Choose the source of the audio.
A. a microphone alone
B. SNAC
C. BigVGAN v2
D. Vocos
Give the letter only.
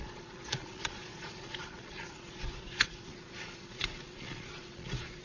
D